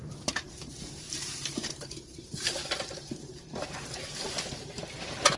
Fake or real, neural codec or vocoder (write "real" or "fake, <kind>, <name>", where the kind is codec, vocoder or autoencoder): fake, vocoder, BigVGAN v2